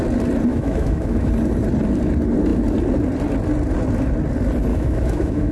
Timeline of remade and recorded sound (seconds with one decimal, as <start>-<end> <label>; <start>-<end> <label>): 0.0-0.5 recorded; 0.5-1.3 remade; 1.3-4.7 recorded; 4.7-5.5 remade